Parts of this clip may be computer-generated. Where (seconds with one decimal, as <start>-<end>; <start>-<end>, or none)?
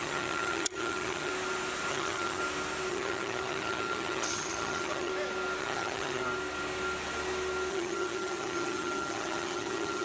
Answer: 0.0-1.3; 1.9-2.4; 2.9-5.1; 5.6-6.2; 7.7-10.0